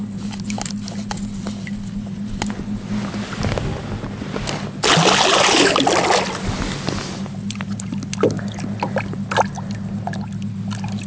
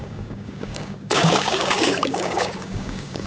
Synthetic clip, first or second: second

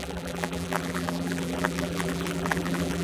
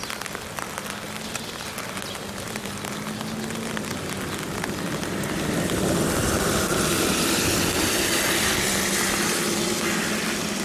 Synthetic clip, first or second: first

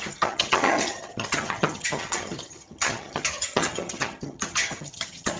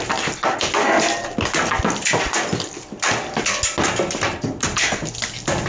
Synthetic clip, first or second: first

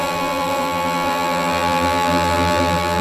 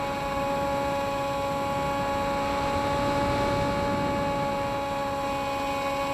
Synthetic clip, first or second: first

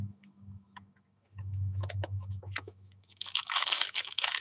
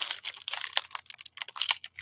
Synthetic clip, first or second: first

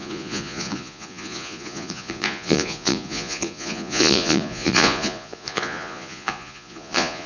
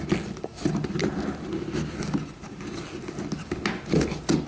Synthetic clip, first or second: first